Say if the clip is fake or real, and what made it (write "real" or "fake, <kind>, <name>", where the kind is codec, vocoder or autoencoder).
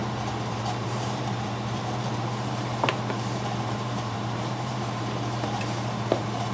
fake, vocoder, BigVGAN v2